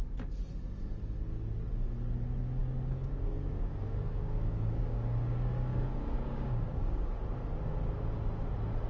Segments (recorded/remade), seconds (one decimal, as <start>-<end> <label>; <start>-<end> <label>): 0.0-2.6 recorded; 2.6-7.1 remade; 7.1-8.9 recorded